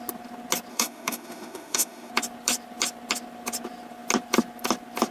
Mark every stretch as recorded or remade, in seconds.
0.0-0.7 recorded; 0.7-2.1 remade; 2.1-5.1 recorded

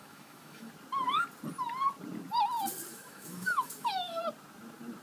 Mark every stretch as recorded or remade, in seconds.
0.0-0.7 remade; 0.7-2.9 recorded; 2.9-4.2 remade; 4.2-5.0 recorded

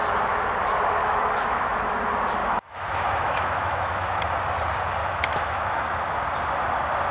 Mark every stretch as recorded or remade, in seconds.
0.0-1.0 recorded; 1.0-2.0 remade; 2.0-2.4 recorded; 2.4-4.2 remade; 4.2-5.0 recorded; 5.0-6.2 remade; 6.2-7.1 recorded

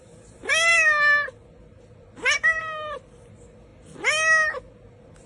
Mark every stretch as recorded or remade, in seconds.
0.0-5.3 recorded